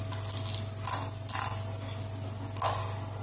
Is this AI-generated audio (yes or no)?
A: no